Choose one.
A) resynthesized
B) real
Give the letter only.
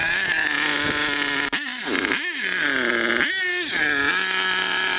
B